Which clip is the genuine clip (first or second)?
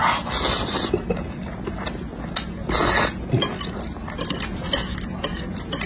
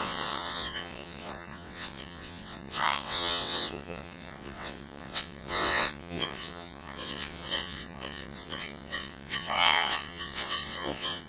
first